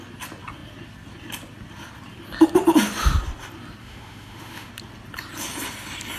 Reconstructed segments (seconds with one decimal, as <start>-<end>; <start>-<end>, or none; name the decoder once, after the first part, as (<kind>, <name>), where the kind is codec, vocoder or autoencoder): 3.8-4.7 (autoencoder, DAC-VAE)